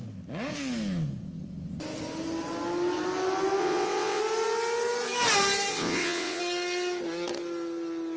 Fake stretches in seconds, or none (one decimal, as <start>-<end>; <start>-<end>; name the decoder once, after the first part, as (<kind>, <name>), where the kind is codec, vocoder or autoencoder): 3.6-4.2 (vocoder, WaveNeXt); 5.7-6.4